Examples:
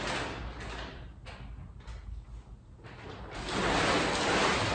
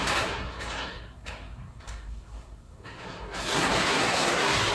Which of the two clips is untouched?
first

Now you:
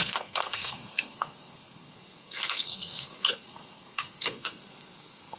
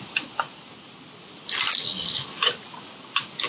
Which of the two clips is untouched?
second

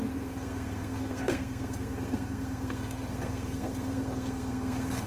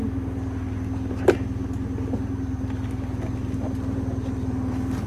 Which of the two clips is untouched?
second